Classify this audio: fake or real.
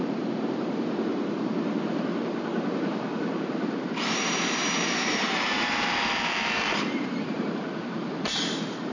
fake